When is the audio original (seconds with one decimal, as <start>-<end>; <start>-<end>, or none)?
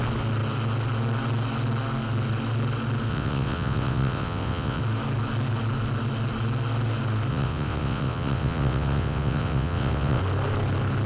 0.0-3.1; 4.8-7.3; 10.2-11.1